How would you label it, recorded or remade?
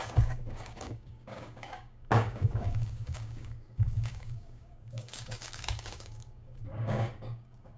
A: remade